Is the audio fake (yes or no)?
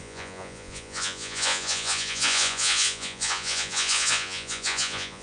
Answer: yes